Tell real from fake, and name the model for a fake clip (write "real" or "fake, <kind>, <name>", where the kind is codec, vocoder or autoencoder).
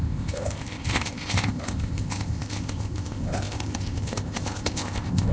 fake, codec, ZipCodec